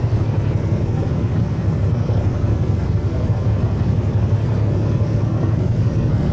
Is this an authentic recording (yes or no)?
no